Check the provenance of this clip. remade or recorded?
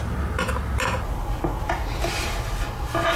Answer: recorded